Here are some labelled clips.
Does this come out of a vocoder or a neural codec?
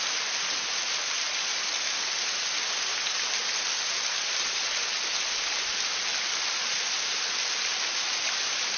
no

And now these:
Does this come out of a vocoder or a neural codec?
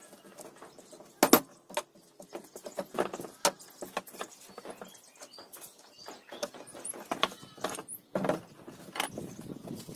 no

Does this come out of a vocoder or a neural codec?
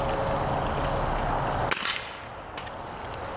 no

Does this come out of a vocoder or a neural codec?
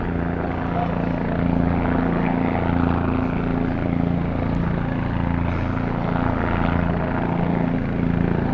no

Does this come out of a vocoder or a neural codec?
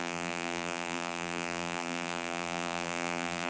yes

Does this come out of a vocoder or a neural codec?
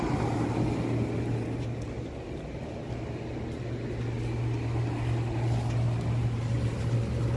no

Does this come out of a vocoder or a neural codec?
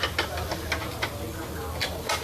no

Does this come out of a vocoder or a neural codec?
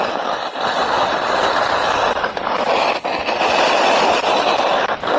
no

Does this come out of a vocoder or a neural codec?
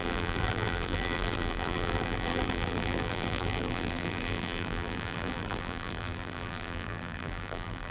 yes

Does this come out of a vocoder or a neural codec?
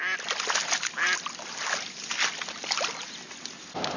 no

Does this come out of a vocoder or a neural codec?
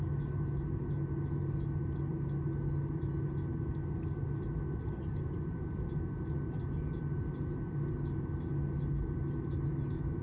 no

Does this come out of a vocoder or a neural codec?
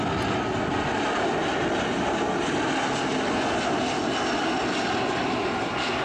no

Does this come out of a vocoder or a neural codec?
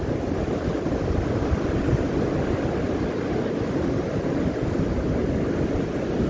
no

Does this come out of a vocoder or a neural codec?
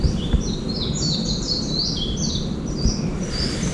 yes